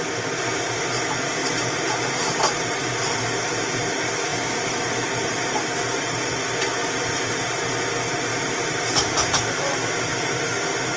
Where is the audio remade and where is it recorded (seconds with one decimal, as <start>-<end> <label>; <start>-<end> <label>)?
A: 0.0-1.4 recorded; 1.4-3.6 remade; 3.6-4.3 recorded; 4.3-4.8 remade; 4.8-8.3 recorded; 8.3-10.3 remade; 10.3-11.0 recorded